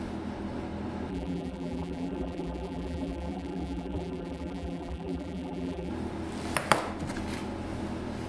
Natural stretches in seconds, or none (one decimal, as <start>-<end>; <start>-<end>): 0.0-1.1; 5.9-8.3